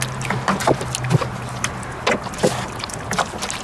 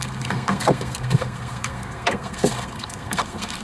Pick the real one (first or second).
first